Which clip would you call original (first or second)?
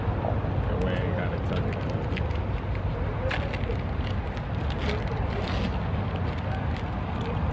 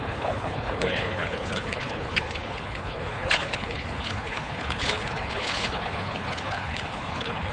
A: first